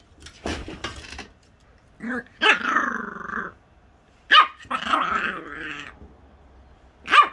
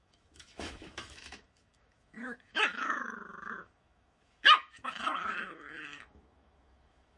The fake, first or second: second